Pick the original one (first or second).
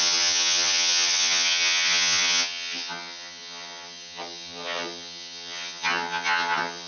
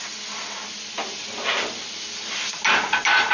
second